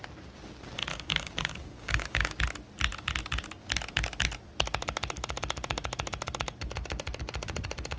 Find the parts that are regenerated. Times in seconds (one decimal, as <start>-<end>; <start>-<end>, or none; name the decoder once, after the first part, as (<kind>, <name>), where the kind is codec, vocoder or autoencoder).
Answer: 0.9-2.4 (codec, DAC)